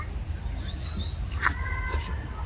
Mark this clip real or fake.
real